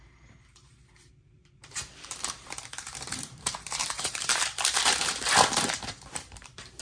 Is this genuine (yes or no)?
no